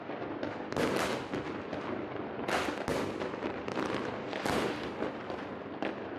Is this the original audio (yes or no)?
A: yes